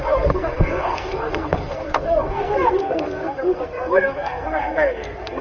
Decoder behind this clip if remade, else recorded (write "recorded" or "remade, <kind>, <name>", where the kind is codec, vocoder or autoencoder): remade, codec, SNAC